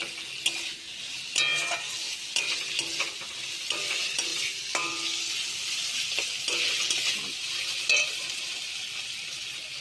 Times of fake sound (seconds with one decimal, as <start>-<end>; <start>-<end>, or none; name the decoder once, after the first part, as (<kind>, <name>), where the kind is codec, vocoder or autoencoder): none